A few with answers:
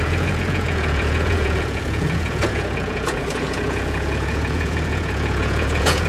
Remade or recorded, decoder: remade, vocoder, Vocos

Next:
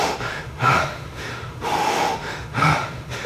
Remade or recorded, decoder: remade, autoencoder, DAC-VAE